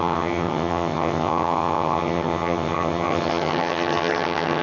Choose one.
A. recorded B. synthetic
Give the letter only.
B